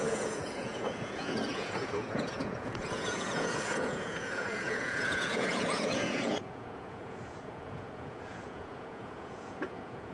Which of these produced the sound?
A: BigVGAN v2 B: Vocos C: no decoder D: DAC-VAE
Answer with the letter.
B